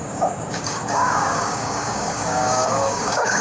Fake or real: fake